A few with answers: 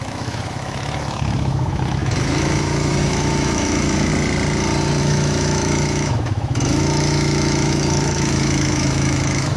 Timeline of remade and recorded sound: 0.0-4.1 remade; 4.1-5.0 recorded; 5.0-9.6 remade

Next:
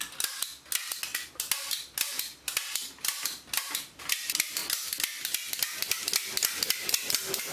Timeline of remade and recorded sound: 0.0-7.5 recorded